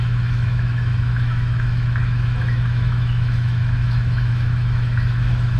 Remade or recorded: remade